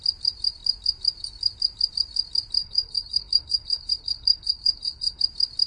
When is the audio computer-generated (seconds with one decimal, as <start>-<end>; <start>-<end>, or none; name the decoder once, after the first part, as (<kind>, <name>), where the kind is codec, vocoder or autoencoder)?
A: 2.6-5.2 (codec, HILCodec)